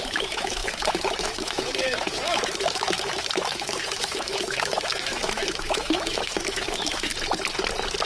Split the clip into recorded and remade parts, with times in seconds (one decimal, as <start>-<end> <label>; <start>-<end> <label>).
0.0-7.1 remade; 7.1-8.1 recorded